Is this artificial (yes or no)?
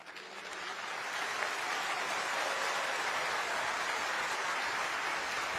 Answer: no